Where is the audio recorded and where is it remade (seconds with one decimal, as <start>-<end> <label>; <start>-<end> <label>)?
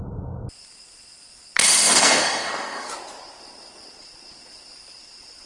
0.0-1.6 recorded; 1.6-2.9 remade; 2.9-5.5 recorded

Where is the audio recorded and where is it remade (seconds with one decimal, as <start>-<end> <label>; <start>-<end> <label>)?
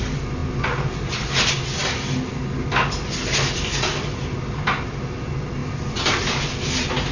0.0-7.1 recorded